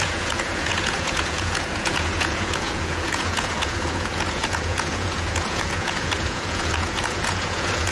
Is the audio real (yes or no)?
no